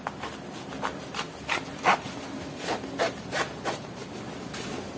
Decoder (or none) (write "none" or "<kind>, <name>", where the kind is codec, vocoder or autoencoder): none